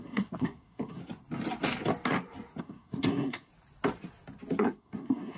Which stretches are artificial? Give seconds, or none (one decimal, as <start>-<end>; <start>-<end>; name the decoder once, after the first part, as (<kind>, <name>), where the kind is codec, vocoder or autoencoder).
0.0-1.0 (codec, SNAC); 2.6-3.5; 4.6-5.4